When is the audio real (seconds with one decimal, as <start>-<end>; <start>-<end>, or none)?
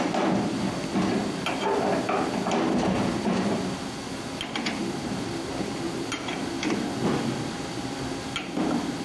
0.0-9.0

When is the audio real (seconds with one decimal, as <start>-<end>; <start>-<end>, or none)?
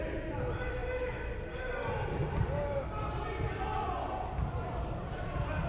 0.0-5.7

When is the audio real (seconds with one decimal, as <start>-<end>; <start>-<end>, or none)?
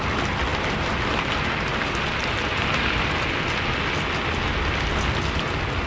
0.0-5.9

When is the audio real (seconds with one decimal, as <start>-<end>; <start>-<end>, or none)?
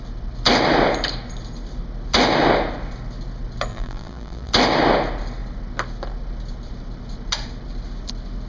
0.0-3.7; 4.5-8.5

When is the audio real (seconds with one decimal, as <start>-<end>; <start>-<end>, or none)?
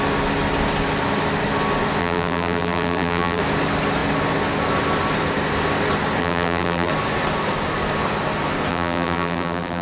0.0-2.0; 3.4-6.2; 6.9-8.7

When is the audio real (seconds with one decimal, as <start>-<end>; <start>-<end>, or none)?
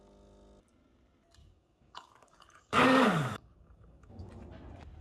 0.0-1.4; 4.3-5.0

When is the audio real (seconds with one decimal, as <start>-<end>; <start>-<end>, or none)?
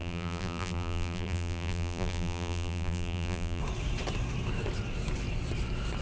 3.6-6.0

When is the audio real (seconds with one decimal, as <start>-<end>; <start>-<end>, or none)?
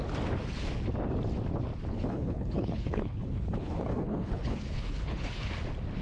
0.0-1.9; 5.5-6.0